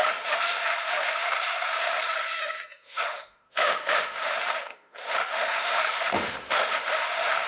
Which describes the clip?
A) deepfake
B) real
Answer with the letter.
A